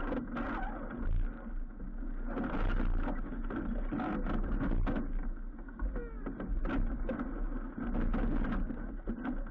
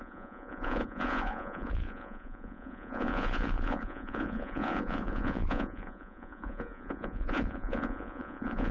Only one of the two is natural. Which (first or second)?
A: first